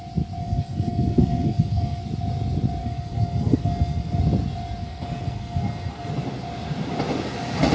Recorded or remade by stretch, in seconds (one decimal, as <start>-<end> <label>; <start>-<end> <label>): 0.0-0.4 recorded; 0.4-2.0 remade; 2.0-2.8 recorded; 2.8-4.2 remade; 4.2-4.8 recorded; 4.8-6.1 remade; 6.1-7.7 recorded